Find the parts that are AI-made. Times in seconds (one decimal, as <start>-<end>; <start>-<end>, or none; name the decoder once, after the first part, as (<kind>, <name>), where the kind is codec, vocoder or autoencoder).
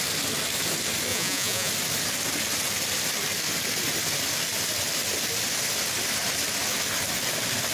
1.1-1.7 (vocoder, Vocos)